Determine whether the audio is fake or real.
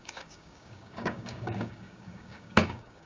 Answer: fake